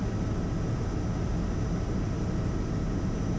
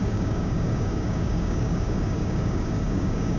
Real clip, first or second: first